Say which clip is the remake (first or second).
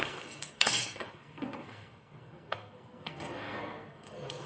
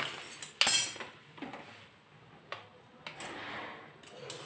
first